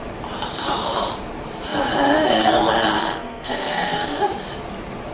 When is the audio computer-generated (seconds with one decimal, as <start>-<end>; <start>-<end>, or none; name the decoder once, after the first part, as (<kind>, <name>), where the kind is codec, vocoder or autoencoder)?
3.0-4.2 (codec, SNAC)